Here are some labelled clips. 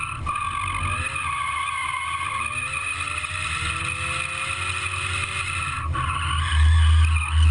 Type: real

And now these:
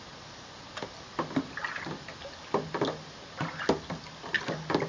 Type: real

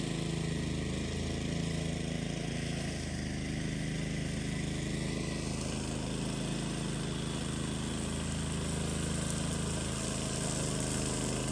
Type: real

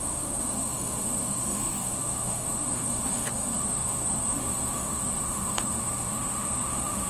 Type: fake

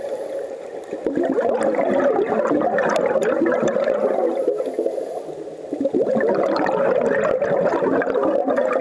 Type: real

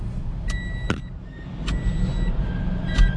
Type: real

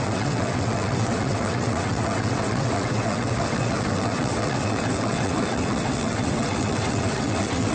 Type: fake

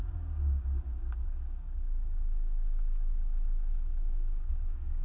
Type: fake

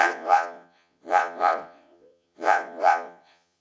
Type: fake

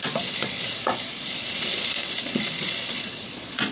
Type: fake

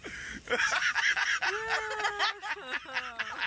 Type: real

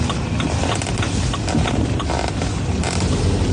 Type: real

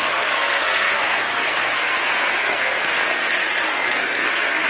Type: fake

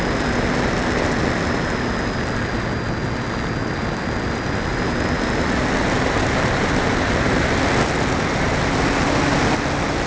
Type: real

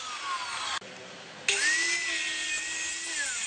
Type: real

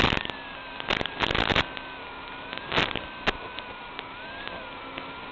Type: real